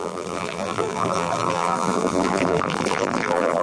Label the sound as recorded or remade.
remade